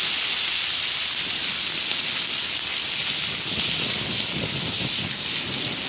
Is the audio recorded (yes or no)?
yes